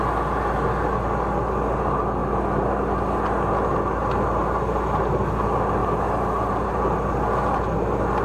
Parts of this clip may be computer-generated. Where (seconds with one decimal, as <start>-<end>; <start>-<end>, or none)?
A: 4.4-5.2; 5.8-6.8